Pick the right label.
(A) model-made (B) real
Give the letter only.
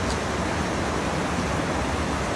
B